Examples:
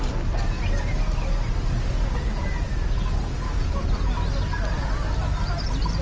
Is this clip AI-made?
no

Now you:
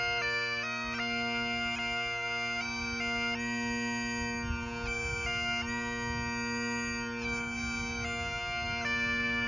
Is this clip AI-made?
no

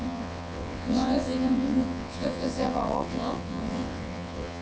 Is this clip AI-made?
yes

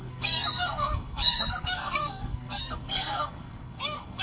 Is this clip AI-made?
yes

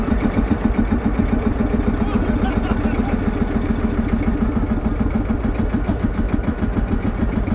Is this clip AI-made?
no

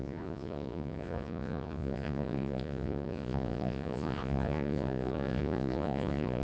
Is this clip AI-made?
yes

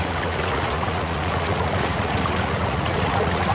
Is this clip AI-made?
yes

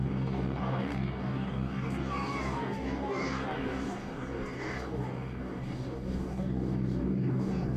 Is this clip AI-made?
yes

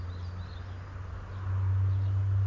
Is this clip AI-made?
no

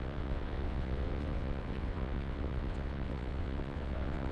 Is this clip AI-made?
yes